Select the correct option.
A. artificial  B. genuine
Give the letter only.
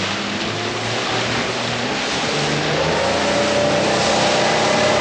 B